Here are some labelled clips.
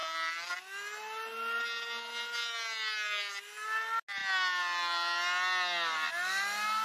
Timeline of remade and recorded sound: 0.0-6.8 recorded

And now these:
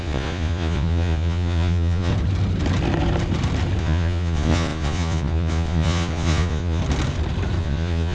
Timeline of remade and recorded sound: 0.0-2.1 remade; 2.1-3.8 recorded; 3.8-6.8 remade; 6.8-7.6 recorded; 7.6-8.1 remade

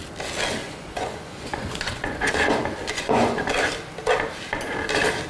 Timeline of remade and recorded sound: 0.0-0.6 recorded; 0.6-2.3 remade; 2.3-2.8 recorded; 2.8-3.5 remade; 3.5-5.3 recorded

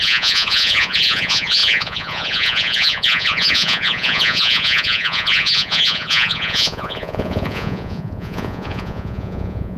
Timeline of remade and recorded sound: 0.0-9.8 remade

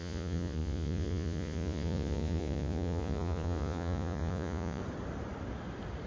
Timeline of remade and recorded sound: 0.0-4.8 remade; 4.8-6.1 recorded

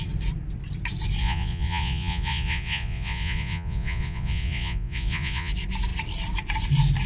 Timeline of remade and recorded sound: 0.0-1.2 recorded; 1.2-5.5 remade; 5.5-7.1 recorded

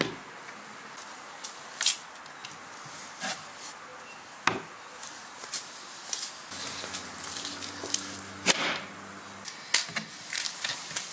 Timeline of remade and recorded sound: 0.0-11.1 recorded

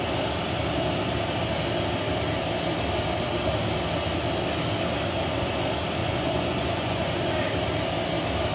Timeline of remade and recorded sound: 0.0-6.0 recorded; 6.0-7.3 remade; 7.3-8.5 recorded